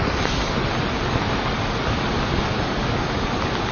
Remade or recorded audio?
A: recorded